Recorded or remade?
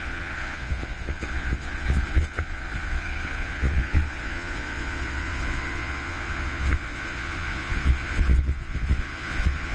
remade